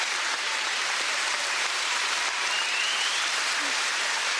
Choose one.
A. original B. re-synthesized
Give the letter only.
B